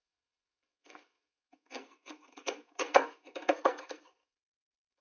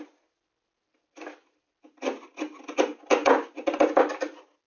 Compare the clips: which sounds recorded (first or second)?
second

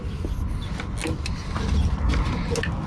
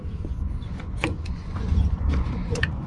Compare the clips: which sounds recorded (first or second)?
first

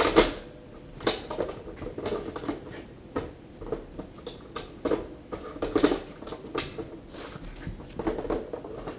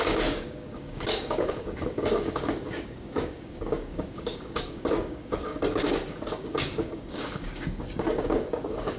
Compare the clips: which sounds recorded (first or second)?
first